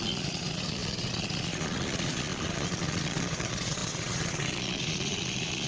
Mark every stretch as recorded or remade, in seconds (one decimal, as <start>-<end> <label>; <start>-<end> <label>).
0.0-5.7 remade